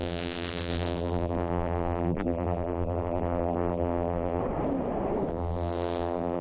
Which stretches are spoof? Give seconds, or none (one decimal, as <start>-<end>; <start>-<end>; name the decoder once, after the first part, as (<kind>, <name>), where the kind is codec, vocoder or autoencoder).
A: 0.0-4.4 (vocoder, BigVGAN v2); 5.3-6.4

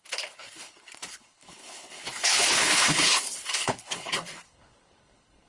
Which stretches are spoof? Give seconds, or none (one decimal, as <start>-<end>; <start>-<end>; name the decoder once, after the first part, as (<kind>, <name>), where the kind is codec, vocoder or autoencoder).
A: 0.0-5.5 (codec, HILCodec)

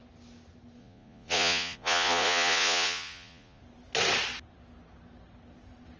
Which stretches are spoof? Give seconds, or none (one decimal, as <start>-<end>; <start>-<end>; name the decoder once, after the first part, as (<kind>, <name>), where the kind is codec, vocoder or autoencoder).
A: 0.8-3.6 (vocoder, Vocos)

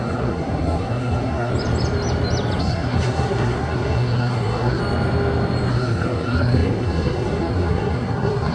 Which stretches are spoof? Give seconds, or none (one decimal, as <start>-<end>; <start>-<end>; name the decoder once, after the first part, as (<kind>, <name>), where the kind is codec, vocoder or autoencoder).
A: 0.0-1.5 (codec, SNAC); 2.6-4.8; 5.7-8.5

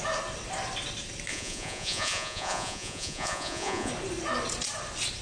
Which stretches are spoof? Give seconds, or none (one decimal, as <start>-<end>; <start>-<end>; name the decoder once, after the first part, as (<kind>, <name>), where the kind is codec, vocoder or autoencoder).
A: 1.3-3.9 (vocoder, Vocos)